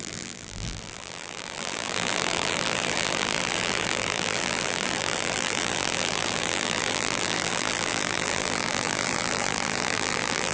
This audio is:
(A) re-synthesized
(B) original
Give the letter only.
A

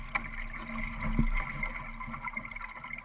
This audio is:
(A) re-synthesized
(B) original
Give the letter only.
B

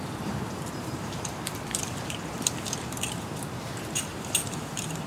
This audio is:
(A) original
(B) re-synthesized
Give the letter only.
B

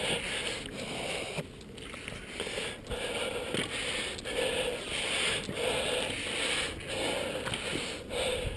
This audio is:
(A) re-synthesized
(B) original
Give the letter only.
B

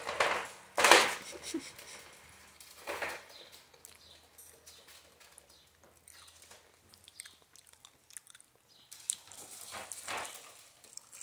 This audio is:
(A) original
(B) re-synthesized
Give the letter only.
A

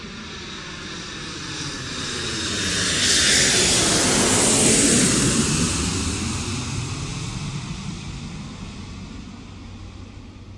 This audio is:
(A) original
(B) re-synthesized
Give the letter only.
A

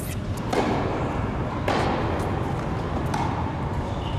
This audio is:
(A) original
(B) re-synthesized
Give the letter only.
A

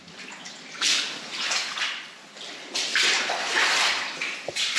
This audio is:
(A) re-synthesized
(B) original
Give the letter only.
A